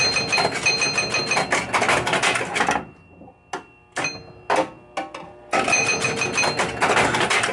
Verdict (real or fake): real